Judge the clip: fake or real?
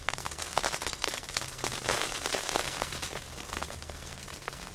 fake